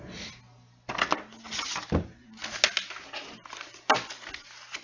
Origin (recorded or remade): recorded